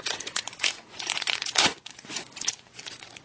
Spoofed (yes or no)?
yes